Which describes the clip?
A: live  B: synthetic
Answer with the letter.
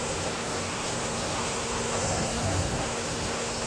B